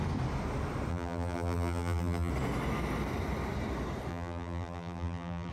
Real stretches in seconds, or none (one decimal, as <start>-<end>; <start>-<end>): 0.0-0.9; 2.3-4.1